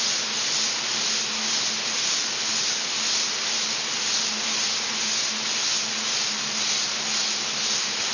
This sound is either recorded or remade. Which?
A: recorded